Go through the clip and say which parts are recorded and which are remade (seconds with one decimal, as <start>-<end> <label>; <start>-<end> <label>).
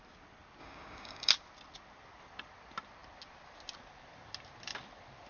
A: 0.0-0.6 recorded; 0.6-1.3 remade; 1.3-5.3 recorded